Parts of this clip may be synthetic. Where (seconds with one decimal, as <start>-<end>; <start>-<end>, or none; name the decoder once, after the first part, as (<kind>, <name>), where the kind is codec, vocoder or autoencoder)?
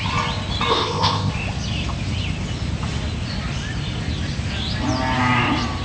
0.7-1.3 (codec, ZipCodec)